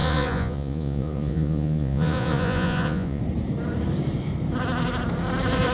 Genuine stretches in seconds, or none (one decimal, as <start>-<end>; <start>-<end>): 3.2-5.7

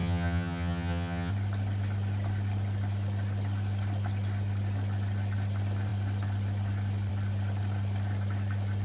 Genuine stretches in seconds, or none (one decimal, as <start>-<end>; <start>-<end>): 1.3-8.8

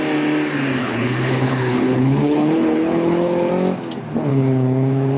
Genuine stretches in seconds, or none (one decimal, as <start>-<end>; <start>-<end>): 0.0-0.8; 3.5-4.3

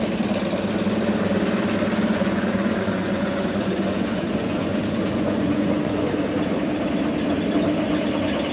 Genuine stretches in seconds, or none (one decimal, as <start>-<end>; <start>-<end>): 0.0-2.1; 6.1-8.5

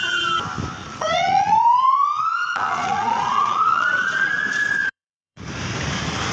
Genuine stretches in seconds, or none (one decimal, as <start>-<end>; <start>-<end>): 0.0-0.8; 4.3-4.8; 5.4-6.3

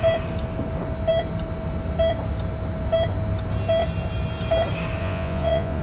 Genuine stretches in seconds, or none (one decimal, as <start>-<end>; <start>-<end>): 0.0-5.0

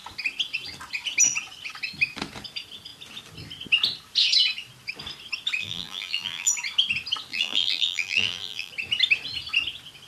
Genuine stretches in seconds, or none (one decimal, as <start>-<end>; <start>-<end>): 0.0-5.6; 6.5-7.3; 8.7-10.1

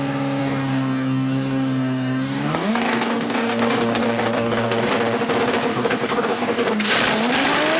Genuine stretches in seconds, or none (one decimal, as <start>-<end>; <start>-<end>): 0.0-0.4; 4.9-5.7; 6.9-7.8